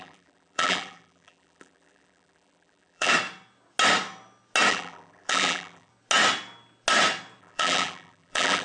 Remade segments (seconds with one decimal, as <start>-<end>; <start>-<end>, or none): 0.0-3.1; 4.7-5.9; 7.4-8.6